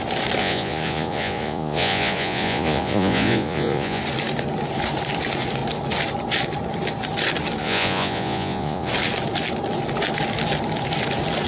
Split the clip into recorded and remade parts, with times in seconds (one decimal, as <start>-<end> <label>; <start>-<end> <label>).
0.0-0.4 recorded; 0.4-4.0 remade; 4.0-7.6 recorded; 7.6-8.9 remade; 8.9-11.5 recorded